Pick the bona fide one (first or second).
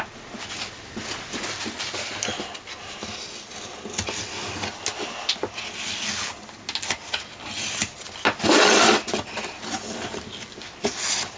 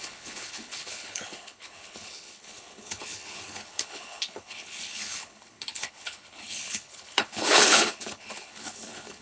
first